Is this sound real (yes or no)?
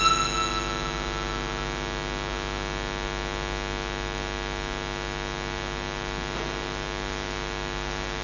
yes